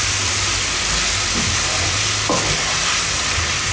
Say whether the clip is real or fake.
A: real